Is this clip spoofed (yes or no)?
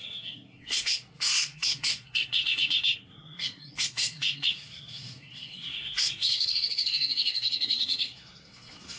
yes